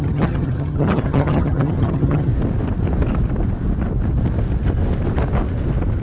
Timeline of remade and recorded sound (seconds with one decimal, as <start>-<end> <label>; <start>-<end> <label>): 0.0-2.3 remade; 2.3-6.0 recorded